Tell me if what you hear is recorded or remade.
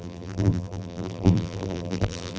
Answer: remade